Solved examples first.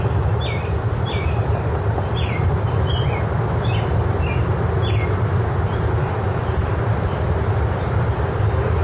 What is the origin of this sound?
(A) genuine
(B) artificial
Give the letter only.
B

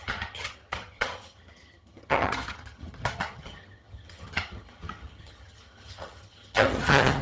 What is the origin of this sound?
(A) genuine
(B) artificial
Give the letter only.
B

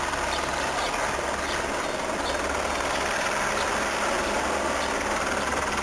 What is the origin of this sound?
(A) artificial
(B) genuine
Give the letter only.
B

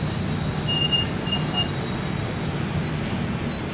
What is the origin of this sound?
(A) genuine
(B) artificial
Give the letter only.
A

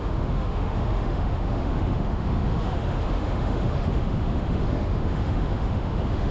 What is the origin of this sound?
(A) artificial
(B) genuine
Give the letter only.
A